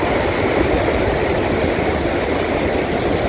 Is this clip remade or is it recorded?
recorded